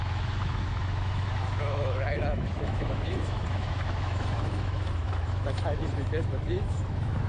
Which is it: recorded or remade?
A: remade